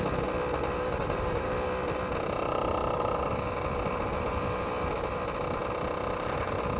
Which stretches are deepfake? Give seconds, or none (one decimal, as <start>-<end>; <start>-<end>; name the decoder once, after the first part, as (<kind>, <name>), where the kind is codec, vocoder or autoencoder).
0.7-1.5 (codec, DAC)